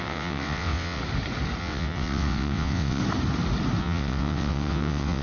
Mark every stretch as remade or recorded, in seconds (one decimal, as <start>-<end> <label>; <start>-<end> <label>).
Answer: 0.0-1.0 remade; 1.0-1.6 recorded; 1.6-3.0 remade; 3.0-3.8 recorded; 3.8-5.2 remade